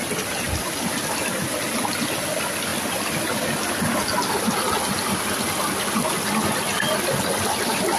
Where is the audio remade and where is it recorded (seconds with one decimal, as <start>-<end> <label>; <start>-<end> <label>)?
0.0-2.7 recorded; 2.7-3.2 remade; 3.2-8.0 recorded